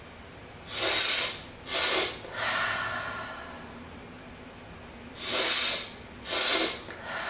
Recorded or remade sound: recorded